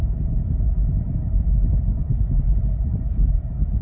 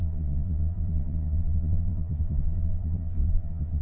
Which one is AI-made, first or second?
second